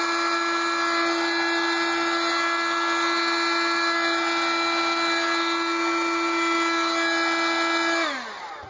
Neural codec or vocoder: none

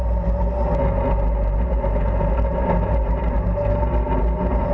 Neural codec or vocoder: none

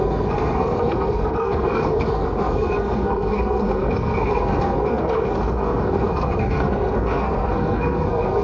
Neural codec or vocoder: codec, SNAC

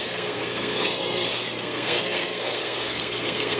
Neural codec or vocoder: codec, SNAC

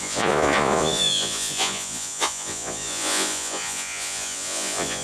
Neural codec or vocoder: vocoder, Vocos